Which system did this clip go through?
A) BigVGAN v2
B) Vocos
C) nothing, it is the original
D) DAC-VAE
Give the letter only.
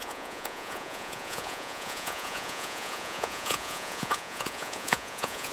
B